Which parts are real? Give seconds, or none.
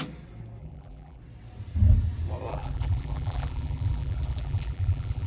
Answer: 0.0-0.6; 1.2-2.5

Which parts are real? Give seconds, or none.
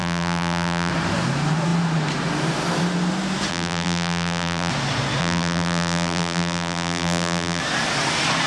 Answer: 0.9-3.5; 4.7-5.2; 7.6-8.5